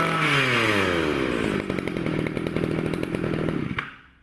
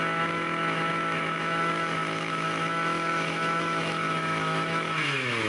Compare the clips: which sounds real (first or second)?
first